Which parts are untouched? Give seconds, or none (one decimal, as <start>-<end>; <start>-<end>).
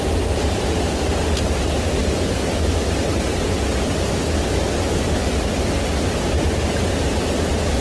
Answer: 0.0-7.8